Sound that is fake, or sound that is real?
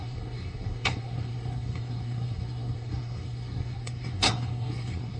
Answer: fake